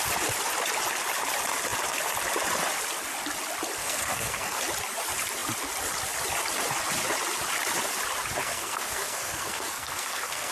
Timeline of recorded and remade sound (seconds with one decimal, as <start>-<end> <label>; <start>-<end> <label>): 0.0-3.8 recorded; 3.8-4.6 remade; 4.6-8.4 recorded; 8.4-10.5 remade